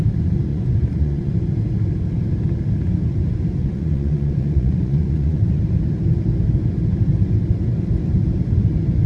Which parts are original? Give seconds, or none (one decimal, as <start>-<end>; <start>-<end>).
0.0-0.5; 1.3-3.6; 5.6-9.1